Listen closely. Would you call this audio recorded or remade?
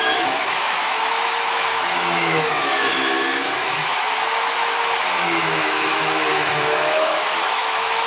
remade